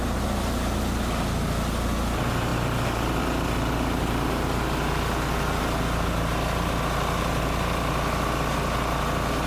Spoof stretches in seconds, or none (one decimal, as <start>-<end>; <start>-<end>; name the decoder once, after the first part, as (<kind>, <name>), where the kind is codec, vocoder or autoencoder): none